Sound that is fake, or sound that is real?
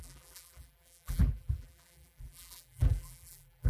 fake